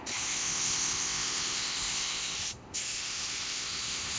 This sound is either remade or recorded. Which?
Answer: remade